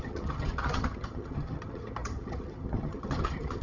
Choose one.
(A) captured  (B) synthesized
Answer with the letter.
B